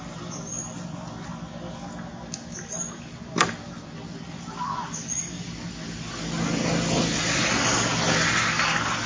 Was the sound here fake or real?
real